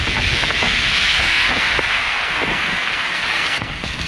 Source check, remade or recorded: remade